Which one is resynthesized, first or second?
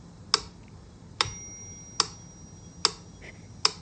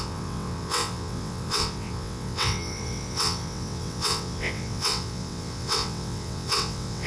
second